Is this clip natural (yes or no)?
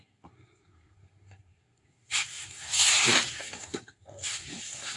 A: no